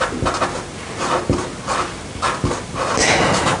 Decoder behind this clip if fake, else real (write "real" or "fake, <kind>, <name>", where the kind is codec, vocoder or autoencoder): real